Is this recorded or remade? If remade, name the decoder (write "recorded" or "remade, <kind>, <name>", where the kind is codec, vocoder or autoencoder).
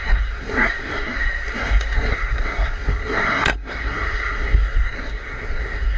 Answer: remade, codec, SNAC